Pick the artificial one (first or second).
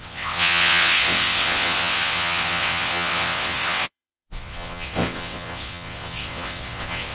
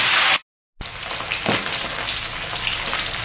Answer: first